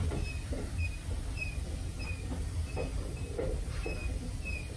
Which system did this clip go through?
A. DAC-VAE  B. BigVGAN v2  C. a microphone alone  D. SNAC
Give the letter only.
C